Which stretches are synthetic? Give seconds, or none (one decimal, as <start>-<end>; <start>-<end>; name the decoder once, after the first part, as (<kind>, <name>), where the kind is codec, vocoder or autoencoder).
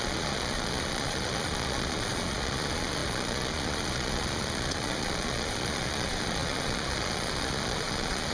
0.0-8.3 (vocoder, Vocos)